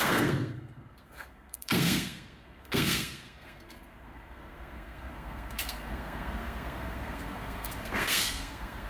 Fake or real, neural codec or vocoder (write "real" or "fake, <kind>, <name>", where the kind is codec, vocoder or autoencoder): fake, codec, SNAC